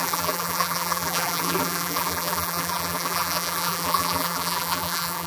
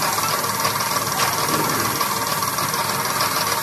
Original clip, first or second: second